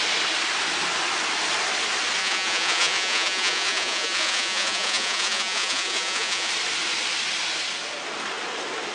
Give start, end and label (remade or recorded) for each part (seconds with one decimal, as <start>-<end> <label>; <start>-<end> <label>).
0.0-2.2 recorded; 2.2-6.5 remade; 6.5-8.9 recorded